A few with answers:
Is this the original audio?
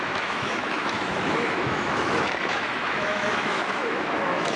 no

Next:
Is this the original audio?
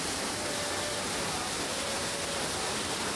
yes